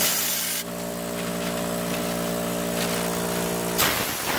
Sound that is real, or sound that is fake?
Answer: real